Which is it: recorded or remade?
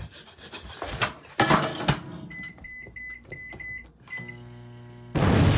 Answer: recorded